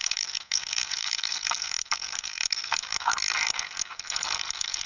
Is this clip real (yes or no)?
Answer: no